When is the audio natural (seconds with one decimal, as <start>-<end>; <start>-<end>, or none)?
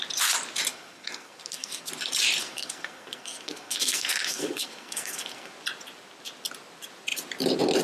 0.0-0.7; 1.9-2.4; 5.5-7.8